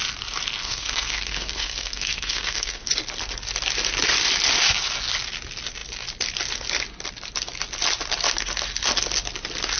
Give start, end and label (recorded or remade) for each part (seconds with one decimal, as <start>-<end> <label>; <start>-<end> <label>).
0.0-0.6 recorded; 0.6-2.9 remade; 2.9-9.8 recorded